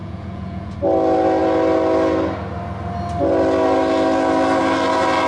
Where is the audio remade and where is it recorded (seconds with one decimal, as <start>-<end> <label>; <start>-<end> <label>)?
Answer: 0.0-0.7 remade; 0.7-5.3 recorded